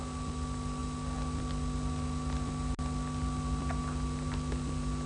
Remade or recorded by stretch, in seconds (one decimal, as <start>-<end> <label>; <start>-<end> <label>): 0.0-5.1 recorded